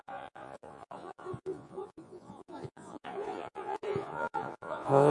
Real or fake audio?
fake